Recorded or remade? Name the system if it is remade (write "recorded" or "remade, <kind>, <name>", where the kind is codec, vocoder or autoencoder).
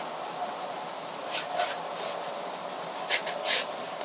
recorded